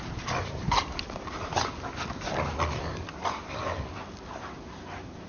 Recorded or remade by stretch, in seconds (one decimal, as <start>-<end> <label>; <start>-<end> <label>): 0.0-2.9 recorded; 2.9-3.6 remade; 3.6-5.3 recorded